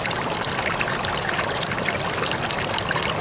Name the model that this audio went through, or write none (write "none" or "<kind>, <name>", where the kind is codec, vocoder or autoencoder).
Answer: none